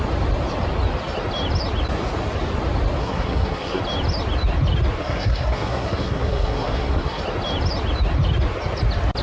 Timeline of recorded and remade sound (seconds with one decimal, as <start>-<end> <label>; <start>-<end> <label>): 0.0-3.0 recorded; 3.0-3.8 remade; 3.8-5.0 recorded; 5.0-7.2 remade; 7.2-9.2 recorded